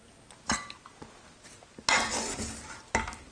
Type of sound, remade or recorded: recorded